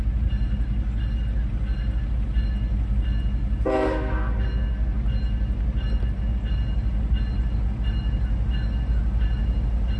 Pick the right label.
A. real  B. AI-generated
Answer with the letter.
A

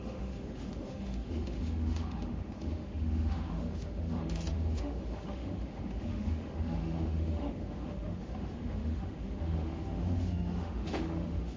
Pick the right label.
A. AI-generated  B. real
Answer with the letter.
A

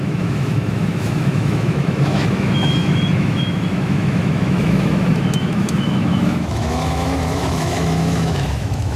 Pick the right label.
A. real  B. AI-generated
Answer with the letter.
B